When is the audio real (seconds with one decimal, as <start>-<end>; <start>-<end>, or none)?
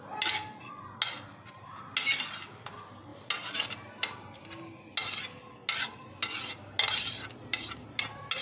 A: 0.0-8.4